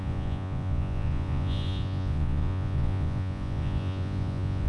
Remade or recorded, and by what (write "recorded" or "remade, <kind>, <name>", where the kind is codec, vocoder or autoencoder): remade, vocoder, Vocos